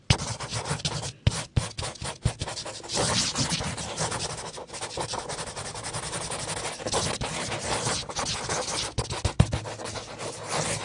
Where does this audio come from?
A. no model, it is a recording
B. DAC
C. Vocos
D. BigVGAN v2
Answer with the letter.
A